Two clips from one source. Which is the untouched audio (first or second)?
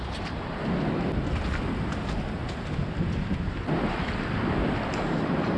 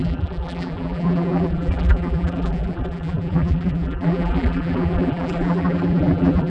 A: first